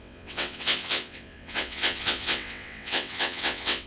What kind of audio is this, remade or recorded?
remade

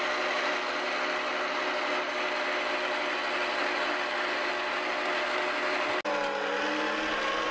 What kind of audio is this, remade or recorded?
recorded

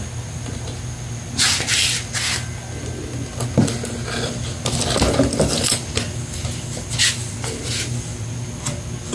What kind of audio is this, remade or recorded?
recorded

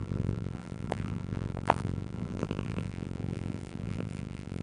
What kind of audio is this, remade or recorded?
remade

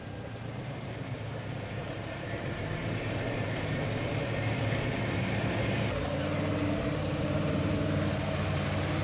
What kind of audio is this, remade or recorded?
remade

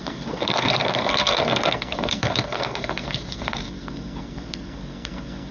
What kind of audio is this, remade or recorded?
remade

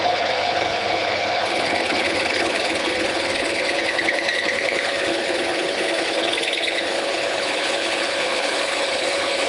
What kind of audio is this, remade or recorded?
remade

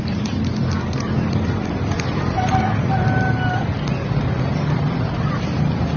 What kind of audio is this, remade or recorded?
recorded